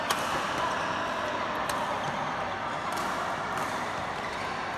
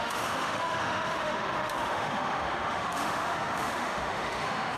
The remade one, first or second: second